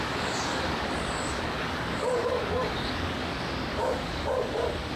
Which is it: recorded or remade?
remade